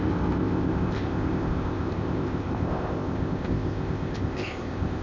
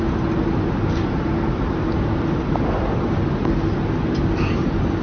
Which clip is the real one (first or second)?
second